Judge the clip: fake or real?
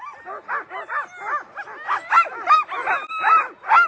real